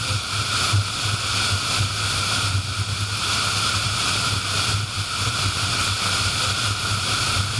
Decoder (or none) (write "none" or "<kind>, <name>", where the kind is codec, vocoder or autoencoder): none